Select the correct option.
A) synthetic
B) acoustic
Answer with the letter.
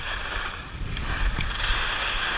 B